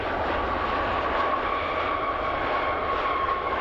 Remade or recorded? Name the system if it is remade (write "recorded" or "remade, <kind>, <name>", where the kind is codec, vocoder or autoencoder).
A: recorded